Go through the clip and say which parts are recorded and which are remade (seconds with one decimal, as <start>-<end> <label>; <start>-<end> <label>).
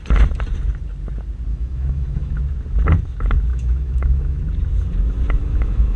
0.0-1.5 recorded; 1.5-2.4 remade; 2.4-3.5 recorded; 3.5-4.4 remade; 4.4-5.4 recorded; 5.4-6.0 remade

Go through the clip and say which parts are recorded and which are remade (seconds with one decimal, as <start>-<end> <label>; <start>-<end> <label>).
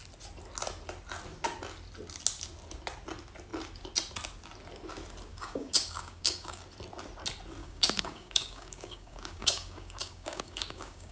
0.0-5.3 recorded; 5.3-6.6 remade; 6.6-7.6 recorded; 7.6-11.1 remade